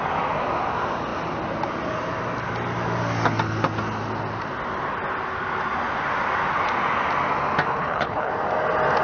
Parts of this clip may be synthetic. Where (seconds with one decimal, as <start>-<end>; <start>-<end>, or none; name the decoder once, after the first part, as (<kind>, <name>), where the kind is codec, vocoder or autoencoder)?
7.7-8.3 (codec, HILCodec)